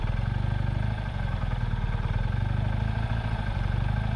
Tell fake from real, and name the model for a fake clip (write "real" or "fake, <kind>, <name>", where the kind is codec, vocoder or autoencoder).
real